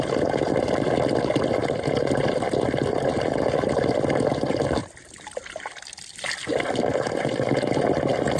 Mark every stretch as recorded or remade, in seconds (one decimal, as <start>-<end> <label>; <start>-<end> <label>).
0.0-8.4 remade